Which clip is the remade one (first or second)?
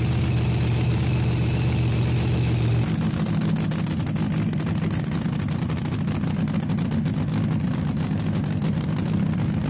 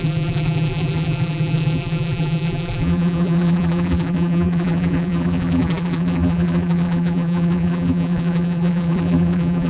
second